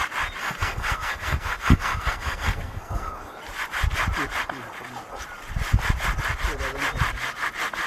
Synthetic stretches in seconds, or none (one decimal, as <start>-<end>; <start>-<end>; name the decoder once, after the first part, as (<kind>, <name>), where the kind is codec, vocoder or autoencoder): 0.4-3.4 (codec, SNAC)